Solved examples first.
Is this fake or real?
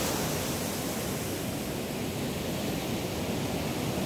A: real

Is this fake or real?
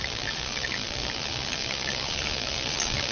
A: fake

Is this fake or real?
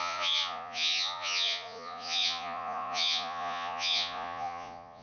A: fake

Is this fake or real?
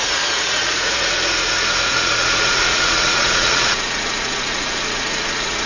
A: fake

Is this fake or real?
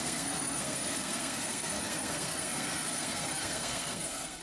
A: fake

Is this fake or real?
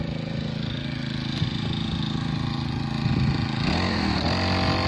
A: real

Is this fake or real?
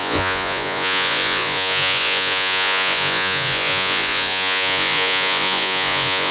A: fake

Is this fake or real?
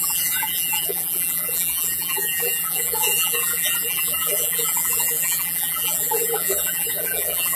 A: fake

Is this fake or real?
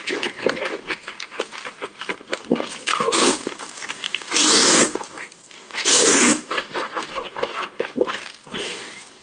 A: fake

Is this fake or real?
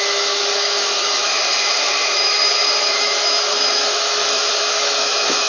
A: fake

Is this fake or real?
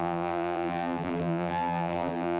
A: fake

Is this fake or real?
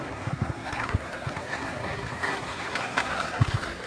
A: fake